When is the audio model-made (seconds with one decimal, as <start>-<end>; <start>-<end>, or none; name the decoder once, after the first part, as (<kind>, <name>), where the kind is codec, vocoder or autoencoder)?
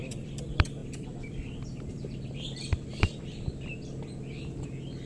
0.0-5.1 (vocoder, BigVGAN v2)